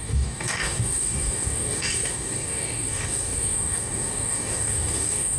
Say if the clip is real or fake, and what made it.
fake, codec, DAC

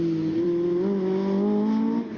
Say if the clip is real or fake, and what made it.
real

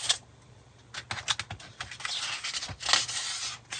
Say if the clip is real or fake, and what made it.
real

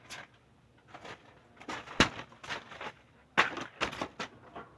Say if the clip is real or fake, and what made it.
real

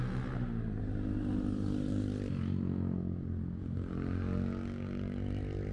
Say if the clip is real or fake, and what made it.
real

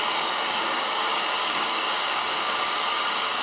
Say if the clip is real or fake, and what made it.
fake, codec, DAC